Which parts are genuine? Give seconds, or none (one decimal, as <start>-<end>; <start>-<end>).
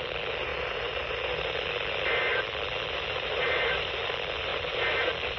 0.0-5.4